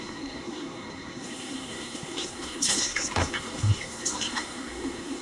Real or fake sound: fake